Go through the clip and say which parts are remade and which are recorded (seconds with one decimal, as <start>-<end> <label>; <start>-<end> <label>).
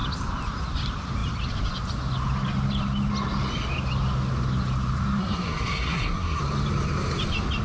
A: 0.0-5.2 recorded; 5.2-6.4 remade; 6.4-7.6 recorded